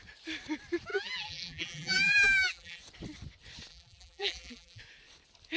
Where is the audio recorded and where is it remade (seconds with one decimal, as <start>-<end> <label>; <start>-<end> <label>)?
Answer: 0.0-0.9 recorded; 0.9-2.8 remade; 2.8-3.7 recorded; 3.7-4.8 remade; 4.8-5.6 recorded